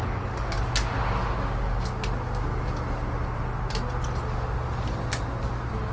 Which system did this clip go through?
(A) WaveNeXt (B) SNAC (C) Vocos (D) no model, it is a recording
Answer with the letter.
D